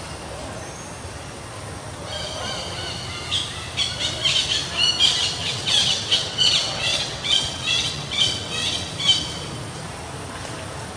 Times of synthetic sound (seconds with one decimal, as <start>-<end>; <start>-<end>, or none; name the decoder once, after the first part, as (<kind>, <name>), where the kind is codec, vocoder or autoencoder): 5.4-8.9 (vocoder, WaveNeXt)